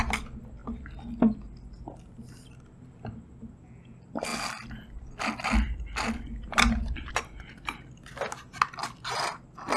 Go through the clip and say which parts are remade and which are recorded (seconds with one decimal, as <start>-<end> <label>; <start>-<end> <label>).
0.0-9.8 recorded